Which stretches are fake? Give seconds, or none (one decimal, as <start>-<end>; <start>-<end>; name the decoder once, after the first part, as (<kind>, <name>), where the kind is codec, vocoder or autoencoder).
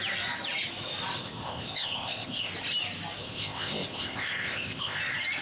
1.2-2.5 (codec, ZipCodec); 3.2-5.0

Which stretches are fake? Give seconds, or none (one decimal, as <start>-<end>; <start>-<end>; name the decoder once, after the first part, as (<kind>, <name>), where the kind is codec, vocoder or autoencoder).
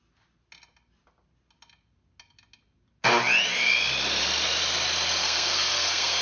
5.2-6.2 (codec, SNAC)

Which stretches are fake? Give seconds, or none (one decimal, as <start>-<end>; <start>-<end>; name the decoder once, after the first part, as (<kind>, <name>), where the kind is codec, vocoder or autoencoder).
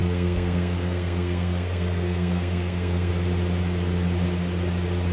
0.0-3.1 (codec, SNAC)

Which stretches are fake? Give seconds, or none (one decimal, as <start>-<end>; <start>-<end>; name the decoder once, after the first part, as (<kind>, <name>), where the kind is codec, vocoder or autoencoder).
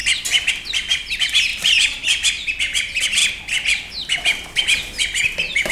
none